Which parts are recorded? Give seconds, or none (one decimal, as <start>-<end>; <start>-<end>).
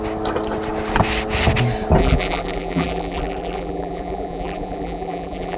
0.0-2.0